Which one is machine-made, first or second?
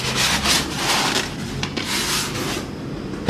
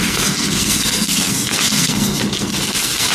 second